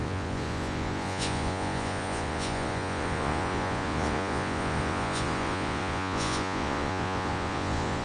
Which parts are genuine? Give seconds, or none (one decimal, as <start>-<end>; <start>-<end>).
none